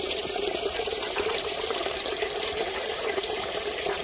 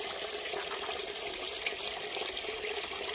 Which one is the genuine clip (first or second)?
second